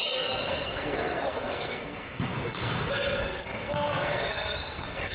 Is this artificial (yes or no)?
yes